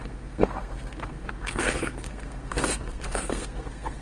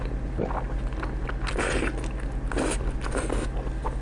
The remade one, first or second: first